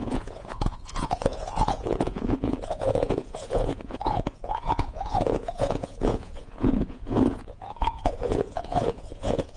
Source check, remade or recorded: remade